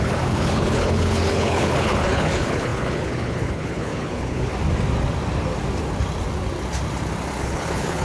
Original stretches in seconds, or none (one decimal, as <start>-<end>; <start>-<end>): 4.5-7.4